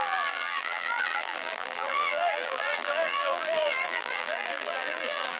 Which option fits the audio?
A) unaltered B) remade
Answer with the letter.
B